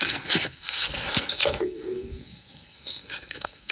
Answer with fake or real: fake